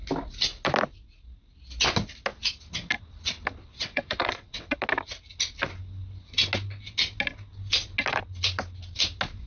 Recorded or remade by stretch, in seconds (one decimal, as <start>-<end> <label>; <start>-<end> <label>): 0.0-3.6 recorded; 3.6-4.7 remade; 4.7-9.5 recorded